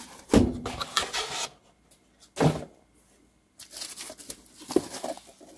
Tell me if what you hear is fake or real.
real